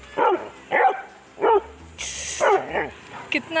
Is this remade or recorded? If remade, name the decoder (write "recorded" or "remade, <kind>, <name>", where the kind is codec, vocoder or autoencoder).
recorded